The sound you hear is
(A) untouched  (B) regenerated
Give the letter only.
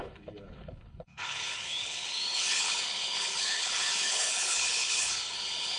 B